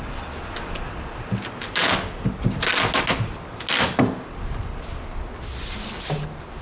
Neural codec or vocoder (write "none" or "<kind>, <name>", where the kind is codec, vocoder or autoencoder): none